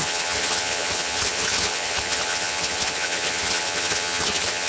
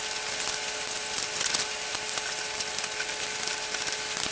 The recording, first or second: second